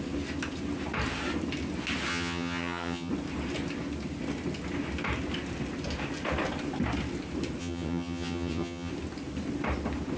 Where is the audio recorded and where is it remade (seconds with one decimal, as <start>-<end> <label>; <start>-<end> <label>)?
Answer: 0.0-2.1 recorded; 2.1-3.1 remade; 3.1-7.6 recorded; 7.6-8.9 remade; 8.9-10.2 recorded